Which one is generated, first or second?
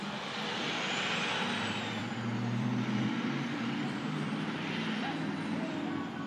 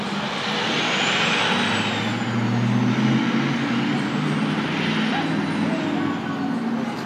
first